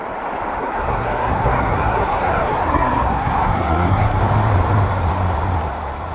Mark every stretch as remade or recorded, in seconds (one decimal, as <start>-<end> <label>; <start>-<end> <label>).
0.0-0.6 recorded; 0.6-4.2 remade; 4.2-6.1 recorded